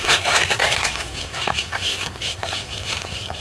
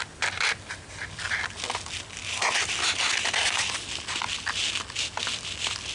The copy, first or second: first